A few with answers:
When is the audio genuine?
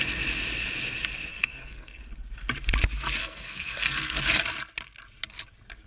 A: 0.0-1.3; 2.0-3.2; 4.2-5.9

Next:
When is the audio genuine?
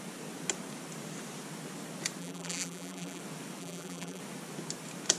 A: 0.0-2.2; 3.2-3.6; 4.2-5.2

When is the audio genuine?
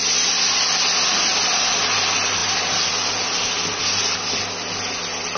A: 0.0-5.4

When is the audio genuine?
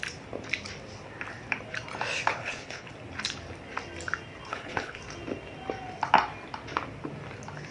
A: 0.0-2.4; 2.9-4.5; 5.0-7.7